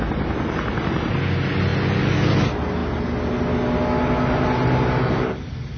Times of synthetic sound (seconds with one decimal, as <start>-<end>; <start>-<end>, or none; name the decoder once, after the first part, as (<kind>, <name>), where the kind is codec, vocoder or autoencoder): none